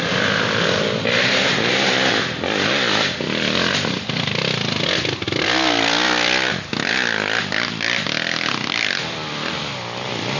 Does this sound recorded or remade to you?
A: recorded